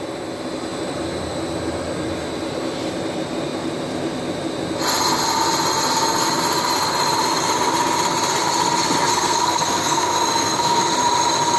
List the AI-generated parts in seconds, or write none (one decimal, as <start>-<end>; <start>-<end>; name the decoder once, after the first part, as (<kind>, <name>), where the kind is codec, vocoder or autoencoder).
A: 9.1-10.8 (codec, SNAC)